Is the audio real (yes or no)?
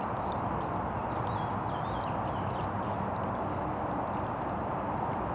yes